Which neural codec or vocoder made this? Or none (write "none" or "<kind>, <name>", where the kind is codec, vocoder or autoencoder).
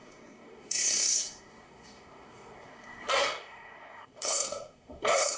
codec, SNAC